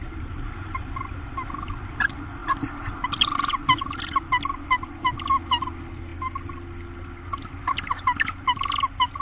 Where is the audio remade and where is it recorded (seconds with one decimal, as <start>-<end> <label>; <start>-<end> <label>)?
0.0-1.1 remade; 1.1-9.2 recorded